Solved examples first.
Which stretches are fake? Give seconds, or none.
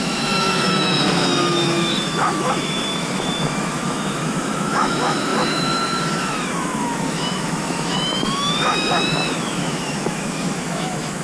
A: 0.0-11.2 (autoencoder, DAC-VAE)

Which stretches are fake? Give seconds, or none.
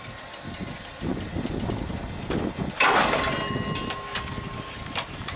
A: none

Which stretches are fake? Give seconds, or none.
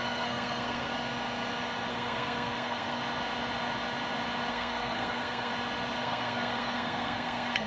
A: 0.0-0.9 (codec, SNAC); 1.9-3.0; 4.5-5.5; 6.0-7.7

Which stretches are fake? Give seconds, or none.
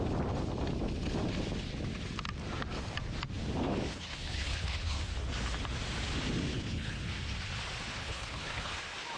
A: 3.9-5.0 (codec, HILCodec); 6.5-7.0; 7.9-8.7